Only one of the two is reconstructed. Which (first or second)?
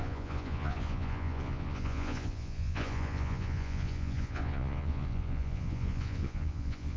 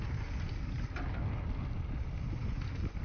first